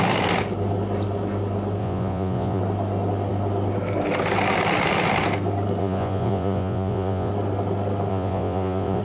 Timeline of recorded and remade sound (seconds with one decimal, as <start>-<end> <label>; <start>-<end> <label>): 0.0-1.8 recorded; 1.8-2.6 remade; 2.6-5.8 recorded; 5.8-7.3 remade; 7.3-8.1 recorded; 8.1-9.0 remade